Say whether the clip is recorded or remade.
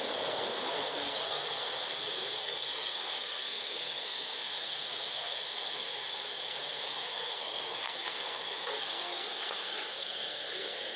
remade